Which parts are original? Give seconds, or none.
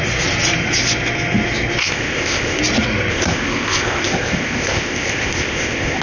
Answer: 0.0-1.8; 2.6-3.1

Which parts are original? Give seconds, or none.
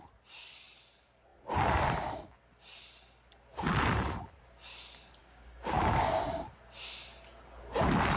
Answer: 0.0-5.2; 6.2-8.2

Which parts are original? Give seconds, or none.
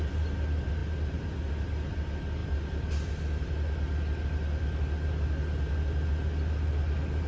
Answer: 0.0-7.3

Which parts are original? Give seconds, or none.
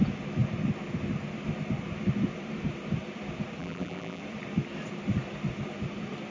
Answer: 0.0-3.6; 4.2-6.3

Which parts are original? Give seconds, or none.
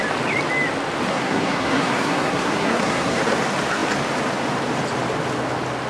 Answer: 0.0-1.1; 3.2-5.9